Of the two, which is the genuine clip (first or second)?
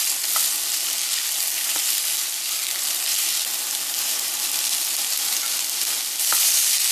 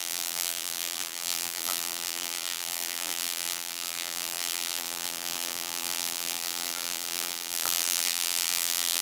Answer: first